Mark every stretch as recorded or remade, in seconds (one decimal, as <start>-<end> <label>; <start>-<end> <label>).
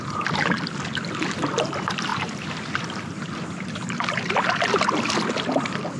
0.0-6.0 recorded